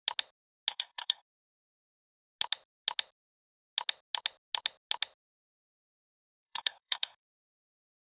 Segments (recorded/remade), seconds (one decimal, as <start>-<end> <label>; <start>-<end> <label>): 0.0-0.7 recorded; 0.7-1.4 remade; 1.4-6.0 recorded; 6.0-7.4 remade; 7.4-8.1 recorded